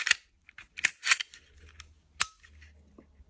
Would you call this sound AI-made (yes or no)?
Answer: no